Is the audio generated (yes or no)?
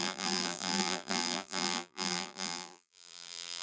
yes